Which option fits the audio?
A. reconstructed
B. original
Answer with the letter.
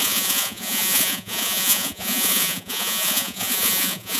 A